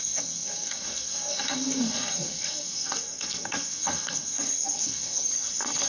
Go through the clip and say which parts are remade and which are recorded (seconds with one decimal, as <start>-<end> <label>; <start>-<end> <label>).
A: 0.0-5.9 remade